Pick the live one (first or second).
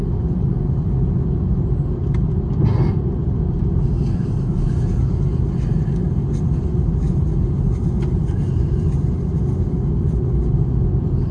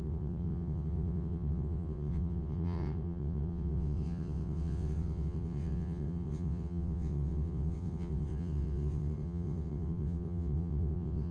first